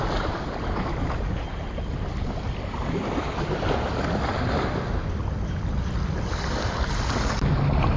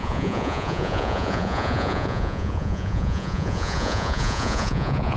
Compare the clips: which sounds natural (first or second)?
first